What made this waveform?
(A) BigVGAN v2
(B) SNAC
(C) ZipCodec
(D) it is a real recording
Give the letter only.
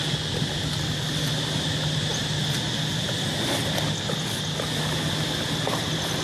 D